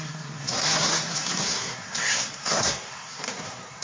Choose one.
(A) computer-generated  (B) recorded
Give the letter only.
A